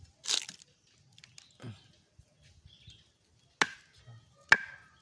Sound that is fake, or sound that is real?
real